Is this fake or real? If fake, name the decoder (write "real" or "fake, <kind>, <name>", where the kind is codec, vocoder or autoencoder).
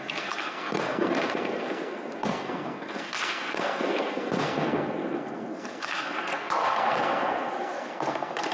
fake, codec, SNAC